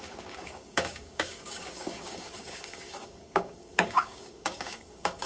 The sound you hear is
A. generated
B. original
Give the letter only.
A